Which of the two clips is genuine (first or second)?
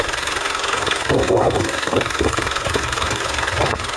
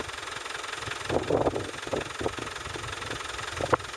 second